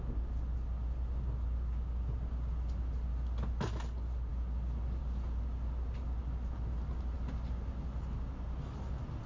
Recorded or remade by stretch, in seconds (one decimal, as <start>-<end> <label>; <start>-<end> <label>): 0.0-9.3 recorded